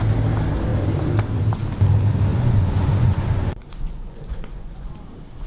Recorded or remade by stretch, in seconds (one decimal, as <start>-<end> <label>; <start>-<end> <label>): 0.0-2.3 recorded; 2.3-4.9 remade; 4.9-5.5 recorded